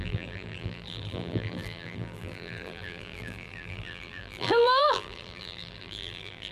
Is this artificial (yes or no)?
yes